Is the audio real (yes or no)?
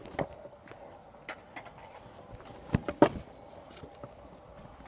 yes